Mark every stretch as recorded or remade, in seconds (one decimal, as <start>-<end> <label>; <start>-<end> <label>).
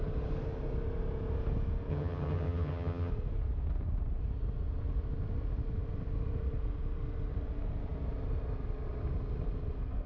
0.0-1.9 recorded; 1.9-3.1 remade; 3.1-10.1 recorded